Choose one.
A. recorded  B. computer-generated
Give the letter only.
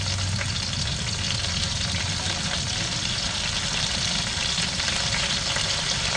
A